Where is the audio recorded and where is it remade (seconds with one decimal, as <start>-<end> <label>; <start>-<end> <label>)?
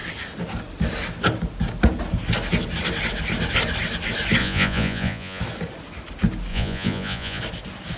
0.0-4.4 recorded; 4.4-5.4 remade; 5.4-6.5 recorded; 6.5-7.4 remade; 7.4-8.0 recorded